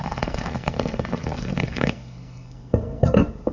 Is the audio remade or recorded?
remade